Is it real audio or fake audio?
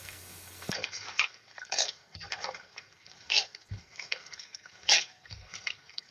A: fake